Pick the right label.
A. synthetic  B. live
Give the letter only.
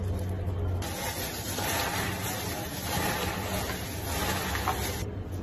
B